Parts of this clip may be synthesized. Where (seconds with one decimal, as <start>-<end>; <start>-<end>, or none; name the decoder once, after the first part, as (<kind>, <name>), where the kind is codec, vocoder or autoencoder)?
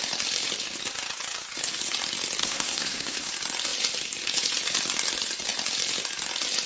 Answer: 2.4-3.3 (codec, SNAC)